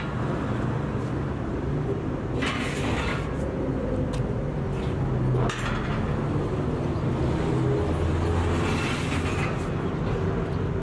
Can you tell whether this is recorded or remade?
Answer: recorded